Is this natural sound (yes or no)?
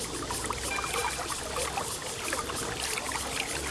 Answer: yes